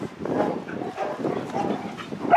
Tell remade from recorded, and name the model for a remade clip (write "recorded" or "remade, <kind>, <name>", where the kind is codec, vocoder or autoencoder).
recorded